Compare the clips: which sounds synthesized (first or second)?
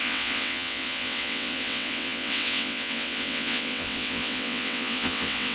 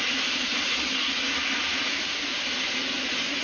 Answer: first